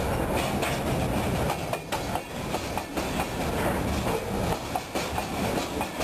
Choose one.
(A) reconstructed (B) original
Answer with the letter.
B